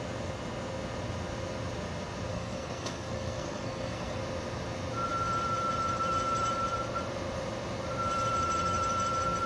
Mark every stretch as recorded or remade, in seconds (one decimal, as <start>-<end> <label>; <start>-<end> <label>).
0.0-2.3 recorded; 2.3-4.2 remade; 4.2-9.5 recorded